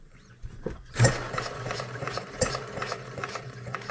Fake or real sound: fake